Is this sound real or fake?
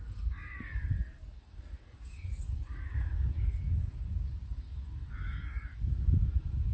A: fake